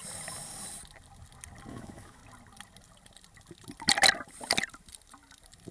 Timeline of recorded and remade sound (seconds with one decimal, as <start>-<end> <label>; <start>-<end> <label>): 0.0-1.7 recorded; 1.7-2.2 remade; 2.2-5.7 recorded